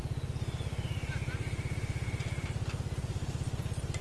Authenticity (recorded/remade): recorded